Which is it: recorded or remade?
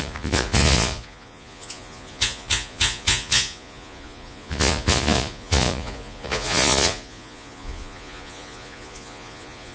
remade